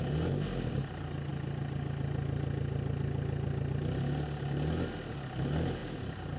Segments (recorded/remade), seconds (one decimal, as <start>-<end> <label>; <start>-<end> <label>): 0.0-6.4 recorded